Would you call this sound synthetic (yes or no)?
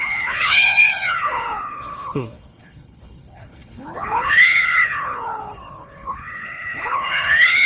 yes